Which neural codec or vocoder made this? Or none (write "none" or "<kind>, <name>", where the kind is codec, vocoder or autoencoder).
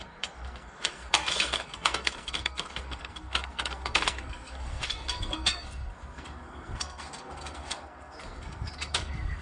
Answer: codec, SNAC